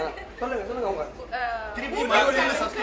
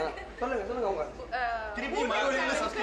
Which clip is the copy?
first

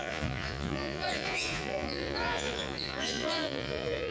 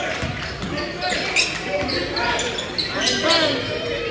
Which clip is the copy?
first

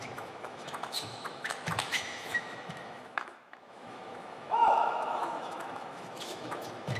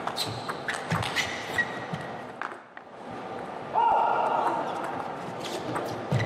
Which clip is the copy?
first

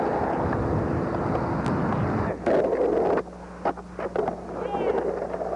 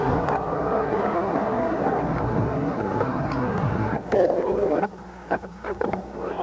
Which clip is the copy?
second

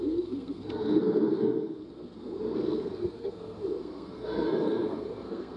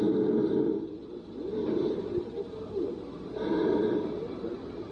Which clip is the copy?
first